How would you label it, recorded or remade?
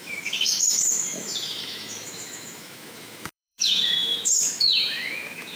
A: remade